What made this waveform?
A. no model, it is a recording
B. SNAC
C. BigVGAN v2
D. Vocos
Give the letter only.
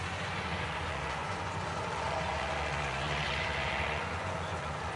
D